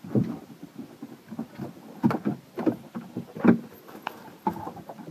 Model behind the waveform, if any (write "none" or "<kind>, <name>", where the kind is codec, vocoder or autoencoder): none